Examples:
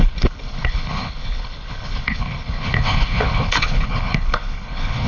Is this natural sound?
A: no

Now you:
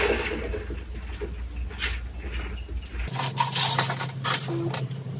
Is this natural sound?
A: yes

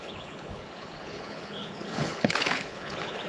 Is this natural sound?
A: no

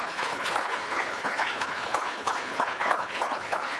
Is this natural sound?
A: no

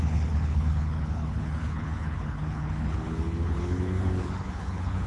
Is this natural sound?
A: no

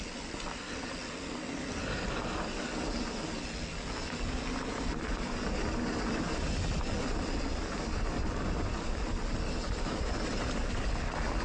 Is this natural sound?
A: yes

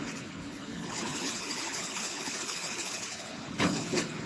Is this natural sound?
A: no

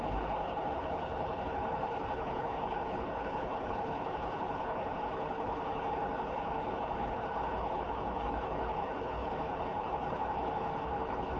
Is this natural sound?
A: no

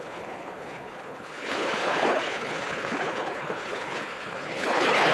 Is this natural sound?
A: no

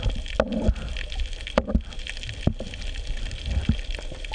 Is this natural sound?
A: yes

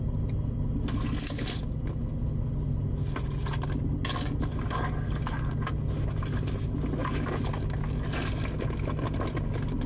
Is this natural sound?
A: yes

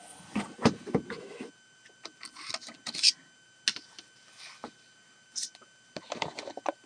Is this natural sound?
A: yes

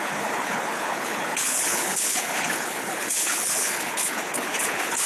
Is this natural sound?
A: no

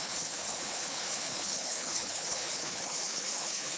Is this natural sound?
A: no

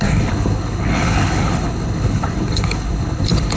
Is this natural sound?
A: no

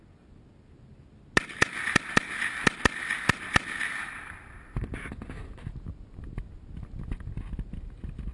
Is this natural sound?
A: yes